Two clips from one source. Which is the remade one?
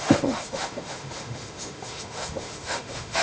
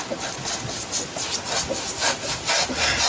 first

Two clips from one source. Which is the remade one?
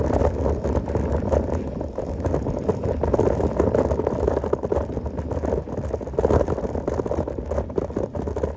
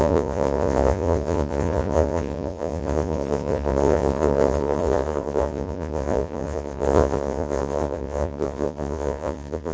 second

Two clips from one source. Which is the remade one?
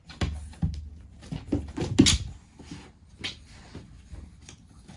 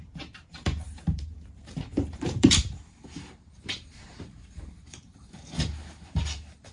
second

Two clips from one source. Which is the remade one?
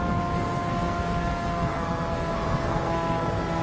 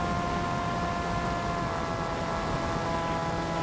first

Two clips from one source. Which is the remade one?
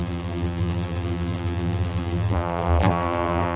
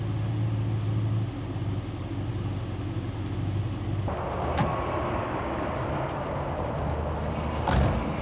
first